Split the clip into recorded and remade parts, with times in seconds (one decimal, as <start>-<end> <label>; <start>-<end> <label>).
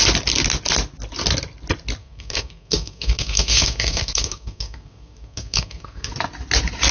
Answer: 0.0-2.0 recorded; 2.0-6.1 remade; 6.1-6.9 recorded